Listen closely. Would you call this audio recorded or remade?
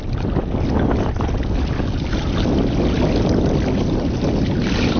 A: recorded